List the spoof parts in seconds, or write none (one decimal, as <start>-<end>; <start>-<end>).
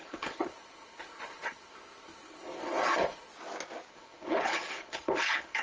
0.0-3.3; 3.9-5.6